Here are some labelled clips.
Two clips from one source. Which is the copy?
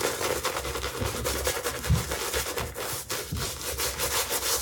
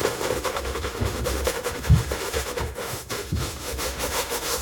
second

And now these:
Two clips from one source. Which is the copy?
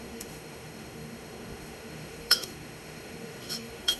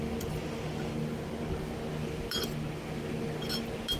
first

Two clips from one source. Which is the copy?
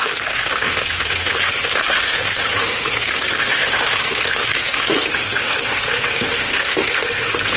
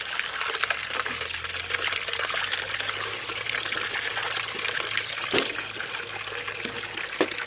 first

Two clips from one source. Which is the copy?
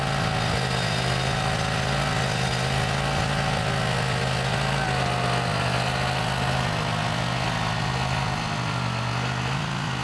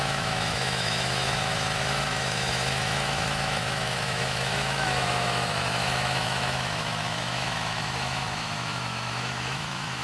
second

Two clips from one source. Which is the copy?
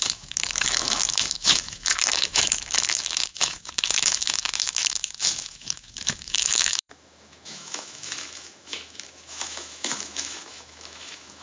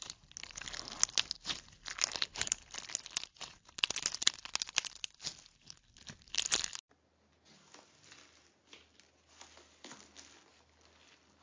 first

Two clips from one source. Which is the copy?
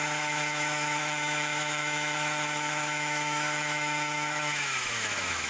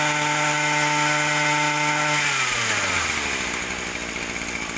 first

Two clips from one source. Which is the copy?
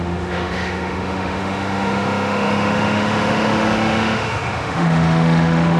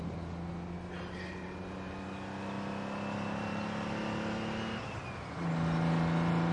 first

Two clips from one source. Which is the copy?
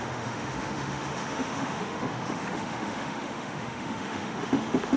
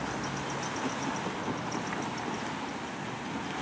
first